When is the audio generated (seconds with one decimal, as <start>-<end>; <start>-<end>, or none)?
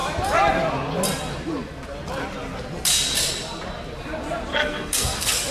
4.5-5.5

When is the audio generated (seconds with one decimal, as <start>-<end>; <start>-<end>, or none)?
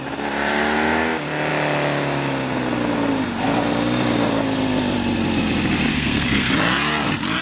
5.9-6.5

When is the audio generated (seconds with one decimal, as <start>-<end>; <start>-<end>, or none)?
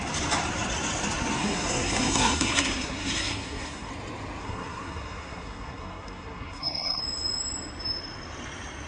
1.4-3.9; 4.4-7.0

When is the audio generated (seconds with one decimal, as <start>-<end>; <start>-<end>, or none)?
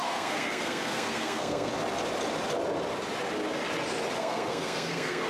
0.0-1.7; 4.2-5.3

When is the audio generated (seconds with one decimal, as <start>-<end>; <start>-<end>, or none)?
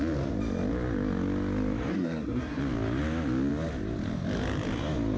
1.9-2.6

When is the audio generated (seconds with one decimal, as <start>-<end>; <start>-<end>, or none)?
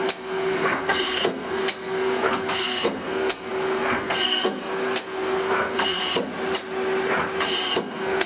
0.0-6.0; 7.8-8.3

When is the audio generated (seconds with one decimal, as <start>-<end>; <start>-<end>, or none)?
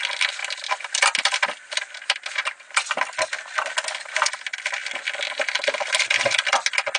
none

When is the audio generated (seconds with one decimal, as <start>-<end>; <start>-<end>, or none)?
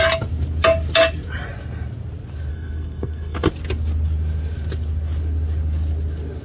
2.5-3.5